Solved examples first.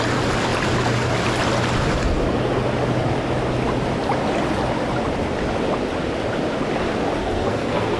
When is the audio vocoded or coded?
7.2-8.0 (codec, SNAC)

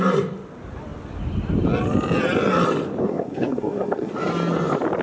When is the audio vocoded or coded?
3.0-4.1 (codec, SNAC)